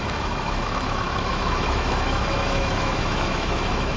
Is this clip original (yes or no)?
no